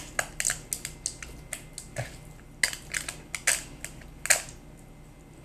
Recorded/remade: recorded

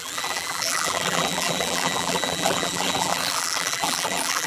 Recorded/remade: remade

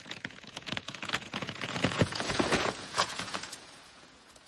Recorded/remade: remade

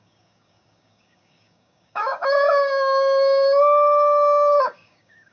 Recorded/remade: remade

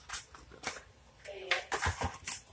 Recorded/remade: recorded